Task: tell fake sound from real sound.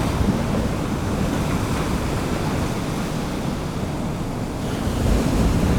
real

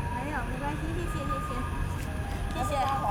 real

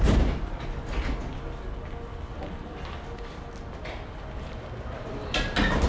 real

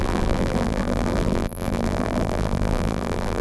fake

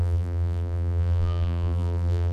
fake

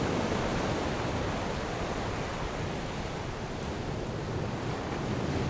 real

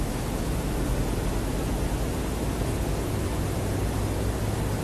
real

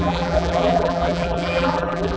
fake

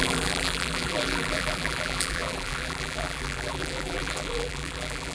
fake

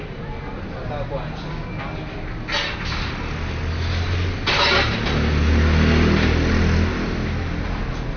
real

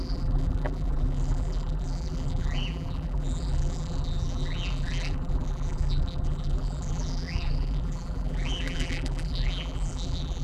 fake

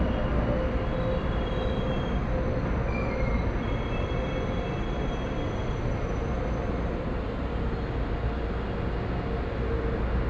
real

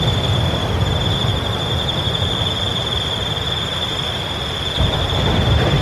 fake